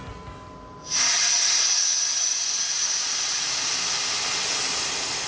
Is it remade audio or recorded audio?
recorded